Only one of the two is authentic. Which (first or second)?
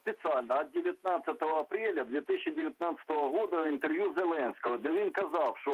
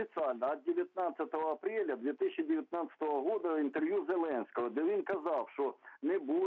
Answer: second